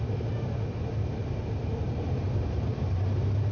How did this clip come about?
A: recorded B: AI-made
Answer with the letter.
A